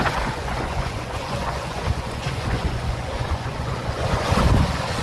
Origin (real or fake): fake